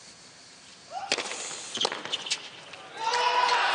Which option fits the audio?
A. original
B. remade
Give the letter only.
A